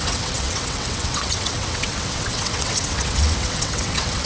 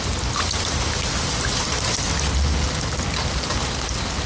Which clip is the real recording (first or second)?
second